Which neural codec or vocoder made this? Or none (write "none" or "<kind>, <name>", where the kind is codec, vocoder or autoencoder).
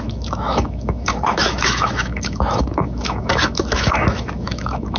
autoencoder, DAC-VAE